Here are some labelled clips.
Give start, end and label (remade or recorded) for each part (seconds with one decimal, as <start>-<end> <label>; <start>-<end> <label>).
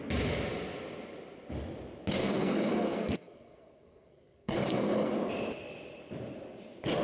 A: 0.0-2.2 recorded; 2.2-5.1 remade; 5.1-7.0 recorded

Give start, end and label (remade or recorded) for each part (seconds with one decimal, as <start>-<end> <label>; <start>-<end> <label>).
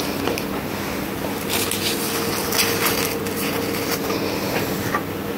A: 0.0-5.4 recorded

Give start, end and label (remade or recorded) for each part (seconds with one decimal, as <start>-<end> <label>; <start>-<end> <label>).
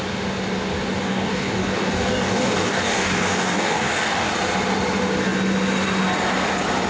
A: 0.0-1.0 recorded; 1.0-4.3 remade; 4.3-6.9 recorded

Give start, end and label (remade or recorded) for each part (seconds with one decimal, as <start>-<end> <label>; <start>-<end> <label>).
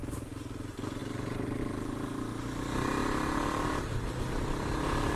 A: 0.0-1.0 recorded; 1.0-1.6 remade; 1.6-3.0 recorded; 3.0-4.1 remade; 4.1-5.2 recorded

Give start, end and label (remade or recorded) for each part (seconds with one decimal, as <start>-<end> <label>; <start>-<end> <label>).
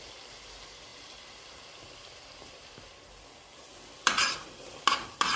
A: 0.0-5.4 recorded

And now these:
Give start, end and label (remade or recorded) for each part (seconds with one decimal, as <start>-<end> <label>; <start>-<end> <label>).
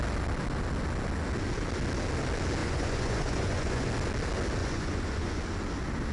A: 0.0-2.6 recorded; 2.6-3.9 remade; 3.9-4.6 recorded; 4.6-5.4 remade; 5.4-6.1 recorded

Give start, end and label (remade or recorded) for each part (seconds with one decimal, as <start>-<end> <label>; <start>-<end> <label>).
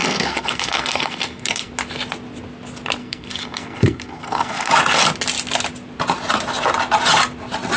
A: 0.0-1.7 remade; 1.7-3.0 recorded; 3.0-4.7 remade; 4.7-7.8 recorded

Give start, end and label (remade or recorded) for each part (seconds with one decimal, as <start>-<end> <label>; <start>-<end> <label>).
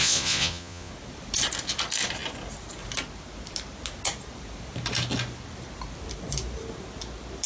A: 0.0-0.9 remade; 0.9-7.5 recorded